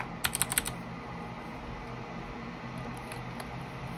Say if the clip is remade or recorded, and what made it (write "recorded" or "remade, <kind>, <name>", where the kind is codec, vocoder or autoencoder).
recorded